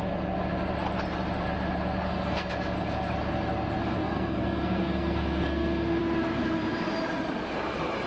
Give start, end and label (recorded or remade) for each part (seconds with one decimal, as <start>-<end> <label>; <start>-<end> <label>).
0.0-2.0 recorded; 2.0-2.5 remade; 2.5-4.0 recorded; 4.0-6.0 remade; 6.0-8.1 recorded